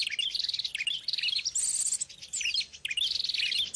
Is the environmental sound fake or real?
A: real